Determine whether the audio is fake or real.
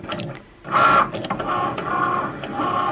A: real